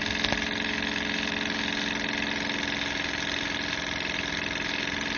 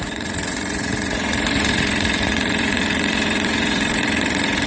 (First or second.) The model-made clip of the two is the second